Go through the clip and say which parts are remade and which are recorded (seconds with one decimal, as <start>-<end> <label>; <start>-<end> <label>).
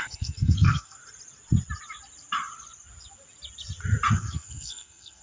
0.0-1.0 remade; 1.0-4.1 recorded; 4.1-5.2 remade